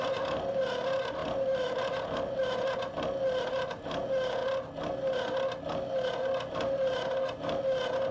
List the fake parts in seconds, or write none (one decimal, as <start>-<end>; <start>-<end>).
1.2-2.5